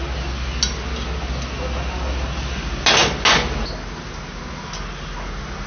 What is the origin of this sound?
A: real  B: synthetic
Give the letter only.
A